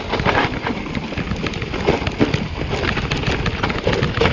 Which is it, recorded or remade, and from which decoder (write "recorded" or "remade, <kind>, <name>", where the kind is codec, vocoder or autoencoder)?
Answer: recorded